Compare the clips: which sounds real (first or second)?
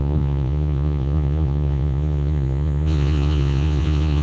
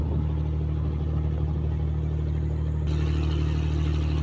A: second